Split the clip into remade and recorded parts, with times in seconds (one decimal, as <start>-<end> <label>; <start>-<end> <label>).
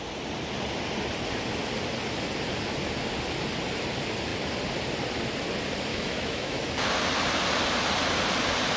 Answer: 0.0-5.9 recorded; 5.9-6.6 remade; 6.6-8.8 recorded